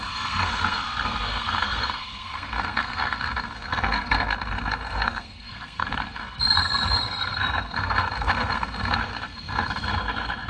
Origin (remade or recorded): remade